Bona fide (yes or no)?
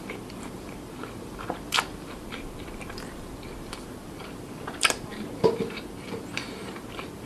no